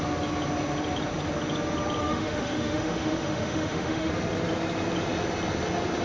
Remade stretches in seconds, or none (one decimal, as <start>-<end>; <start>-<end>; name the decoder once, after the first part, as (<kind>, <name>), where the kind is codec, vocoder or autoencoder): 2.0-4.1 (autoencoder, DAC-VAE)